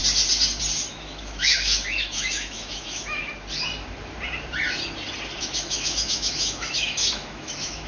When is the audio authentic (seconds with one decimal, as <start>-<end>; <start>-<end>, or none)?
0.0-0.9; 3.2-5.4

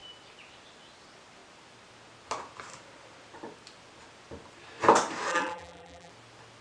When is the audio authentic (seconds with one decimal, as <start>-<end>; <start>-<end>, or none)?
0.0-5.3; 6.1-6.6

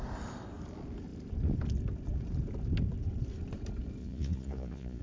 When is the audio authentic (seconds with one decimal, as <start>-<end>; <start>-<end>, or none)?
0.0-4.0